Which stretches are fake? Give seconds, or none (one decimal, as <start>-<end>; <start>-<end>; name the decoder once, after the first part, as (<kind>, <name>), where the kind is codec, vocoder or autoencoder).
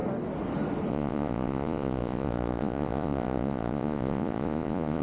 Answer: 0.9-5.0 (vocoder, Vocos)